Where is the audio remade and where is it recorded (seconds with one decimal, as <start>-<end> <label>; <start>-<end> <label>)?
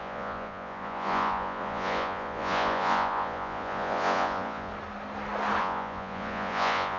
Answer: 0.0-4.7 remade; 4.7-5.6 recorded; 5.6-7.0 remade